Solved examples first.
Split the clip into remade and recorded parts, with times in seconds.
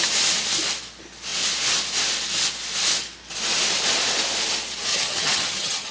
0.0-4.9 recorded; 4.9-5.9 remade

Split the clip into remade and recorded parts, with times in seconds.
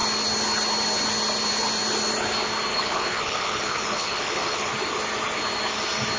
0.0-2.7 recorded; 2.7-4.7 remade; 4.7-6.2 recorded